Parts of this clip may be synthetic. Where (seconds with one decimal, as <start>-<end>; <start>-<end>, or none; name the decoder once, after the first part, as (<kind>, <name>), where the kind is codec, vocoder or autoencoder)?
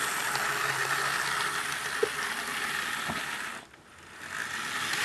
none